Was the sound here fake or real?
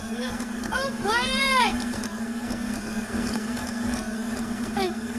fake